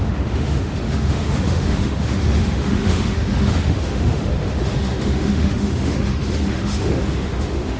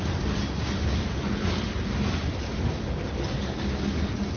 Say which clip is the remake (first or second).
first